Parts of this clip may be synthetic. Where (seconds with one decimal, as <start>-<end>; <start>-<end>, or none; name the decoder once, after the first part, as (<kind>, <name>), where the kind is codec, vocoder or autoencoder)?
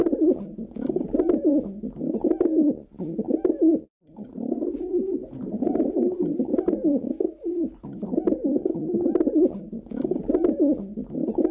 0.0-0.7 (vocoder, Vocos); 5.2-5.9; 6.5-7.1